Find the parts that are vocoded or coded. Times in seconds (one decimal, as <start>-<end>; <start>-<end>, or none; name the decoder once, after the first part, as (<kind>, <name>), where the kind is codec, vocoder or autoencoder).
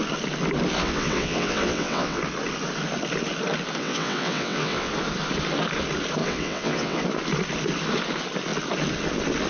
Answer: 0.8-2.2 (vocoder, WaveNeXt); 3.8-4.9; 6.2-7.0